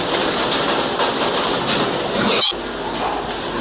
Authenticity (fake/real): real